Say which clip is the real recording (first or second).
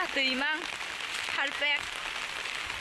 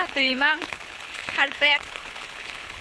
first